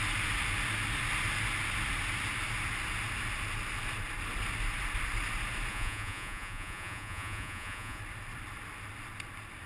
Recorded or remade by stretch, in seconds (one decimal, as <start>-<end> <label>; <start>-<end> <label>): 0.0-5.7 recorded; 5.7-8.0 remade; 8.0-9.7 recorded